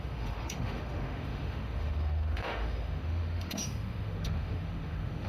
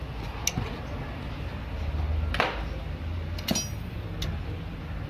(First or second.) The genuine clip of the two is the second